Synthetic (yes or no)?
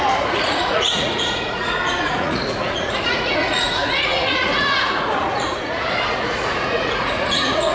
yes